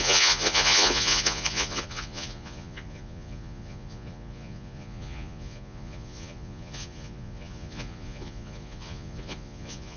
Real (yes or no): no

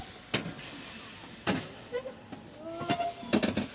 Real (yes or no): yes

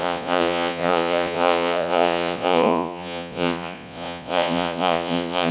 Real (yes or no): no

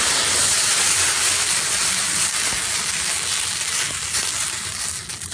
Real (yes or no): yes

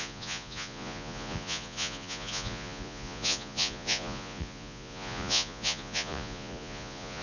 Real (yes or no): no